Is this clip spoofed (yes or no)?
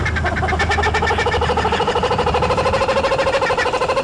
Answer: no